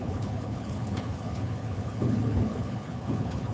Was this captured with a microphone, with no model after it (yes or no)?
no